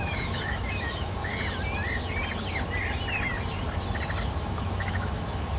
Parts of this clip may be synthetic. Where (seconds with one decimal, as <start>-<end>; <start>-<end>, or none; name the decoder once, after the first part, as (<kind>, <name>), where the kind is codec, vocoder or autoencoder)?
0.0-1.3 (autoencoder, DAC-VAE); 4.4-5.6